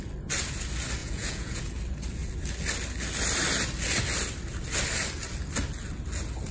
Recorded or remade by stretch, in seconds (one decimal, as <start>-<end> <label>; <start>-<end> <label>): 0.0-1.0 recorded; 1.0-1.7 remade; 1.7-6.5 recorded